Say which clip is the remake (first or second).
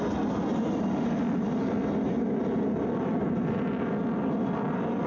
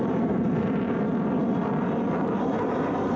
second